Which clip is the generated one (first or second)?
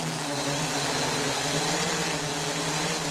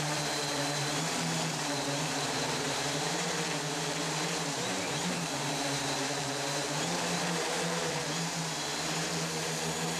second